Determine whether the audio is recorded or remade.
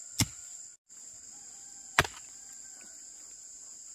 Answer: recorded